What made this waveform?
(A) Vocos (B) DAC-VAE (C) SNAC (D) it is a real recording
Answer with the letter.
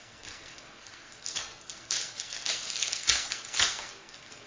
C